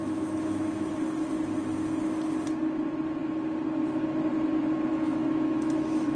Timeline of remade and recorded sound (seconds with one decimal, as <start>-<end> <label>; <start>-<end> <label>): 0.0-0.9 remade; 0.9-4.9 recorded; 4.9-6.2 remade